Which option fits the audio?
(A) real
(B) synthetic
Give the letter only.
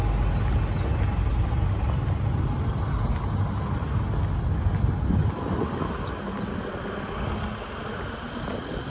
A